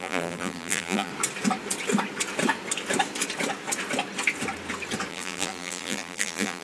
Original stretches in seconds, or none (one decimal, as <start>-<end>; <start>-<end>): 1.1-5.1

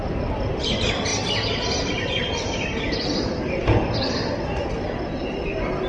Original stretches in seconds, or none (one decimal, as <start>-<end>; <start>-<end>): 0.0-5.9

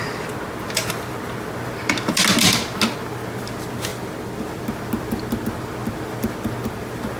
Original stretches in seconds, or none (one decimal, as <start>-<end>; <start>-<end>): 0.0-7.2

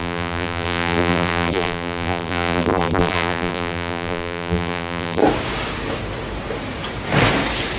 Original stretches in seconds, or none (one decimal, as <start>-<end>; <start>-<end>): 5.2-7.8

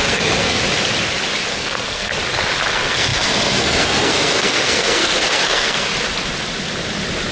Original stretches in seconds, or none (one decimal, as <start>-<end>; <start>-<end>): 0.6-1.5; 2.1-2.7; 5.9-7.3